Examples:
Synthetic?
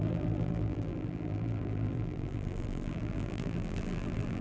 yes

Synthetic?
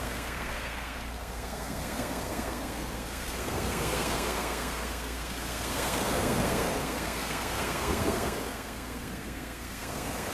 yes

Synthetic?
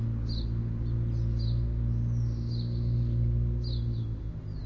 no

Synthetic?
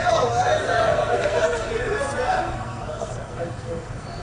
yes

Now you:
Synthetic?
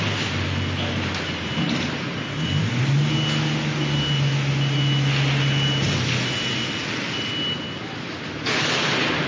no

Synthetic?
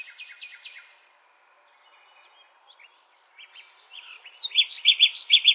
no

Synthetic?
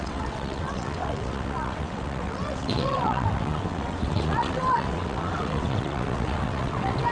yes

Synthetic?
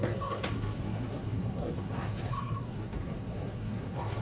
yes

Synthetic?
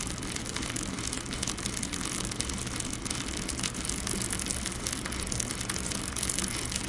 no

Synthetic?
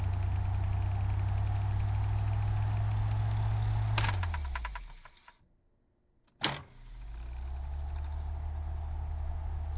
no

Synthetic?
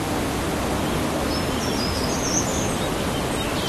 no